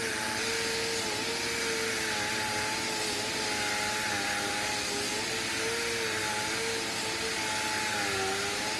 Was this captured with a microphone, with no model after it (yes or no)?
yes